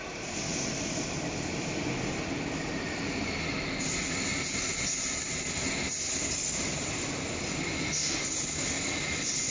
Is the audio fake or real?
real